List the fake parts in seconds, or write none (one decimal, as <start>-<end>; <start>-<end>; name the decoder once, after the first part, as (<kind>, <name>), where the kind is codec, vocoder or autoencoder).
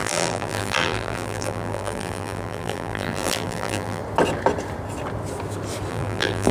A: 0.0-4.0 (vocoder, BigVGAN v2); 5.9-6.5